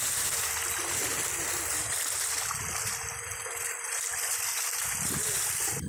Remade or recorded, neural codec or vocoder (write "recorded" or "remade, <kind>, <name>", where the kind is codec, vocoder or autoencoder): recorded